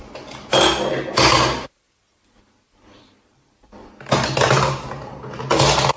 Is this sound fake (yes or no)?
no